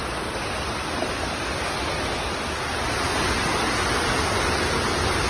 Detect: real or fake real